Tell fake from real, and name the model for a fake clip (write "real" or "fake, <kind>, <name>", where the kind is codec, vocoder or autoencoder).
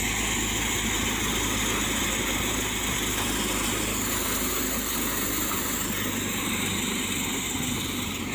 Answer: real